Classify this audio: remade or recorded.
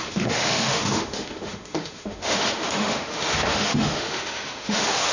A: remade